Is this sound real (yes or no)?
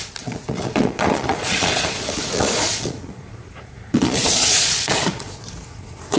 no